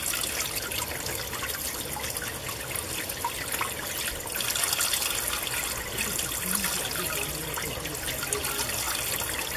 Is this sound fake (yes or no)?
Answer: no